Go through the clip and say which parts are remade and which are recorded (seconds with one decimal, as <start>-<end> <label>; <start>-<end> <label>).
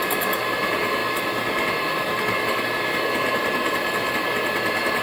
0.0-5.0 recorded